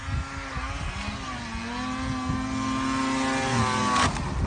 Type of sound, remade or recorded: recorded